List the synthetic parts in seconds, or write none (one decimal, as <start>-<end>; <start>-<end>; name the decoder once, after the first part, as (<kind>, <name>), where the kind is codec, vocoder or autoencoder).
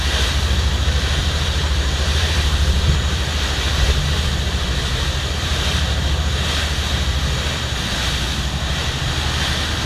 1.2-6.1 (vocoder, BigVGAN v2)